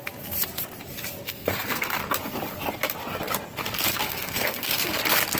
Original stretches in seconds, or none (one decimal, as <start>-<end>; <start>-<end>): 0.0-1.3; 2.0-3.9; 5.0-5.4